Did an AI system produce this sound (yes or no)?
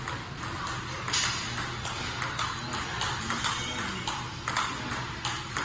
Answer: no